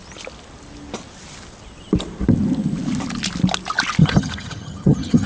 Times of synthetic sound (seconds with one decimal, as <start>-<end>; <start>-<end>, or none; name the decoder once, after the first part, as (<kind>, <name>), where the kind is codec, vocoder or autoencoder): 4.0-5.3 (vocoder, HiFi-GAN)